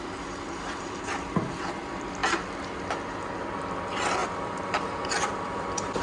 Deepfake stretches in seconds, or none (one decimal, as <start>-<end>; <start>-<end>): 0.0-2.2; 3.4-6.0